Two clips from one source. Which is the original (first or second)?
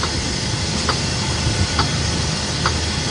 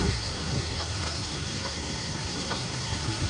first